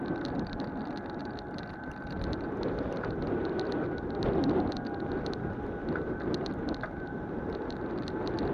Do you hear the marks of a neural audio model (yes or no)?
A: no